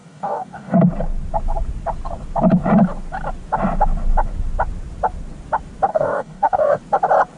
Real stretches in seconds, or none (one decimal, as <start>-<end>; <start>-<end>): 0.8-5.9; 6.8-7.4